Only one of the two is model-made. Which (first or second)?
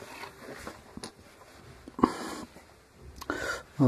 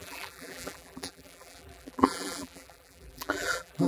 second